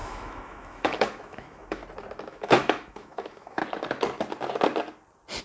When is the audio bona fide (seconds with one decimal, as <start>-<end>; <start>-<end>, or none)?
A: 1.8-2.3; 3.6-5.4